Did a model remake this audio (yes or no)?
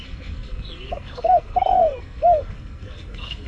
yes